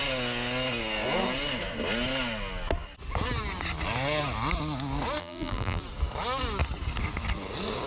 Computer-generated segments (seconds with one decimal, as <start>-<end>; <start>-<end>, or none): 5.2-5.8